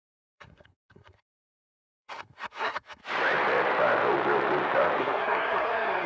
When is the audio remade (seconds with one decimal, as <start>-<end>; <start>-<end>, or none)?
0.0-3.0; 5.0-6.1